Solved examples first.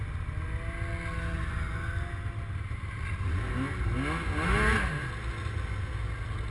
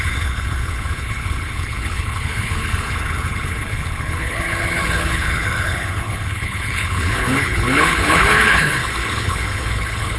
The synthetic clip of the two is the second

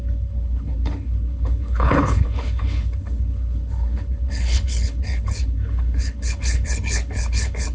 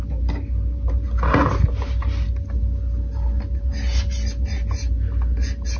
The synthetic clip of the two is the first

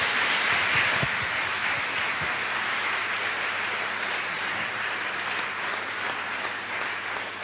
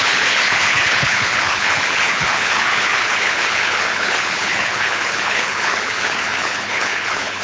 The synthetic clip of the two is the second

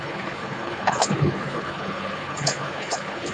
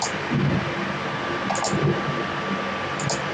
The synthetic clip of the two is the first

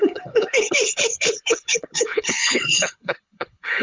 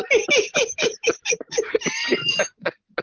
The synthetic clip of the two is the first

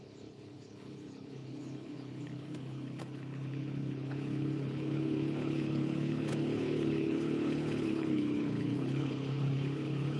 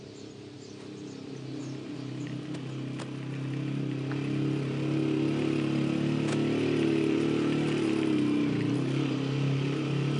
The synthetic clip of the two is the first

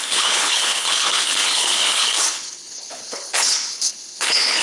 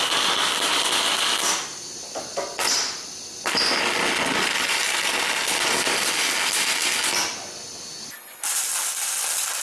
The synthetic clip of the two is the first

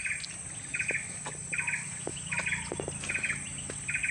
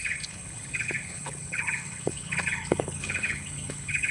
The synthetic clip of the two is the second